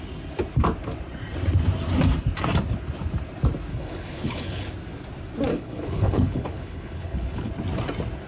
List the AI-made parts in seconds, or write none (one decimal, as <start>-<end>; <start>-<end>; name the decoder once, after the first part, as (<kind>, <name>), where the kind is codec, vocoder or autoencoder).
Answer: 3.7-4.7 (codec, HILCodec); 5.5-7.5